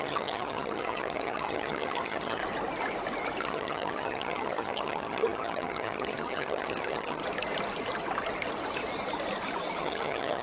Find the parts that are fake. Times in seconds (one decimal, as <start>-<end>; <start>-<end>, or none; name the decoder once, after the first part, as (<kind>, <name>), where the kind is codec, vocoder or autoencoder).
0.0-2.4 (vocoder, HiFi-GAN); 3.4-7.2; 9.8-10.4